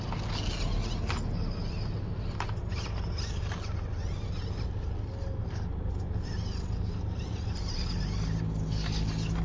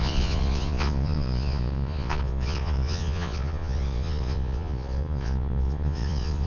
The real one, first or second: first